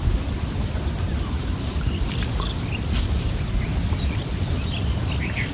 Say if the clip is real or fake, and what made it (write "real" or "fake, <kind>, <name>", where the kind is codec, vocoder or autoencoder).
real